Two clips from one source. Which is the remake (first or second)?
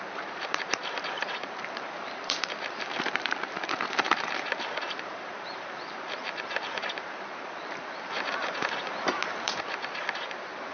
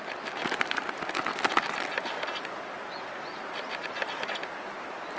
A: first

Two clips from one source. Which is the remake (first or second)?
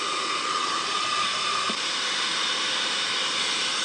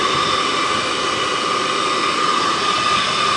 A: first